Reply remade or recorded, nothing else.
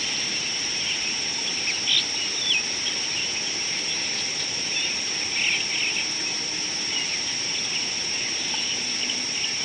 recorded